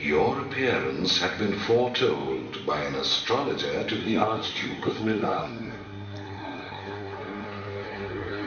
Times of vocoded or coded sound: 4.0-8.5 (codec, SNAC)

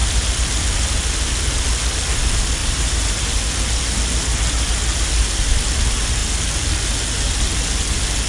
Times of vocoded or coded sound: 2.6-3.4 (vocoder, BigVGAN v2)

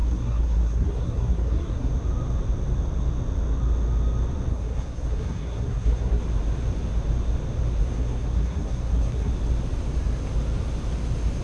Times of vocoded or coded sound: 0.0-1.9 (codec, SNAC); 4.5-6.2; 7.8-9.3